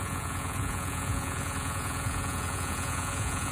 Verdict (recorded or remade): remade